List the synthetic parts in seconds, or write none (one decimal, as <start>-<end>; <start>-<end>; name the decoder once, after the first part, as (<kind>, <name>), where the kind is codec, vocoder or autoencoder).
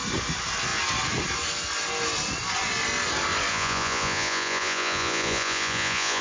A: 3.5-6.2 (vocoder, Vocos)